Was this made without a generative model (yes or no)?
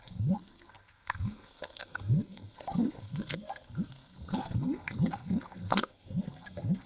no